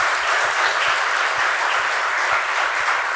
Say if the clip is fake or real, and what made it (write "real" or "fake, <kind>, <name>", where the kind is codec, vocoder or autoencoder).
real